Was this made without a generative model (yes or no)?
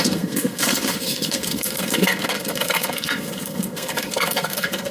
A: no